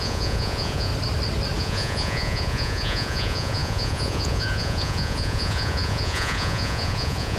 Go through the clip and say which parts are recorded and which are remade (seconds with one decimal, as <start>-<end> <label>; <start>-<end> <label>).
0.0-0.9 remade; 0.9-1.6 recorded; 1.6-7.4 remade